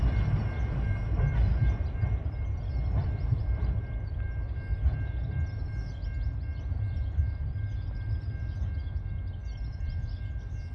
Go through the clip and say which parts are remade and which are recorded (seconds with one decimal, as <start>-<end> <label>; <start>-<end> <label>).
0.0-10.7 recorded